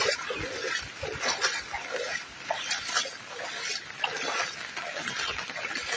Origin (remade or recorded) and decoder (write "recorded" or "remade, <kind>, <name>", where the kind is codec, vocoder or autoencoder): recorded